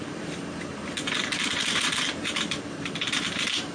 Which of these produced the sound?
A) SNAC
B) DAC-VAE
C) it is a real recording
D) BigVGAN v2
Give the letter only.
D